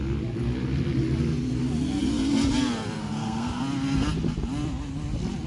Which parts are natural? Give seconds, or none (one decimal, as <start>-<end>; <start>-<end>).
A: 0.0-3.0; 3.6-5.5

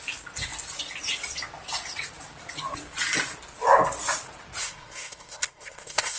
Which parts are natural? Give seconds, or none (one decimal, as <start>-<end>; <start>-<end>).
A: 0.0-4.6